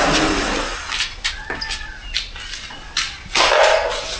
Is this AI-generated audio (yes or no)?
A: no